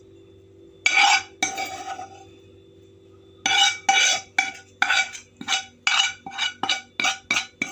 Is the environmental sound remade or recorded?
recorded